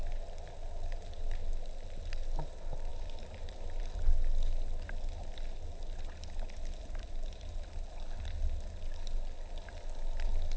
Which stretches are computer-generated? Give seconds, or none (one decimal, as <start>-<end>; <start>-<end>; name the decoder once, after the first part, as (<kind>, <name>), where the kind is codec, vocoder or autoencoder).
none